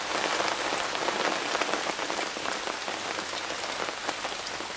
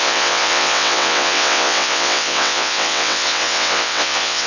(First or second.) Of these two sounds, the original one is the first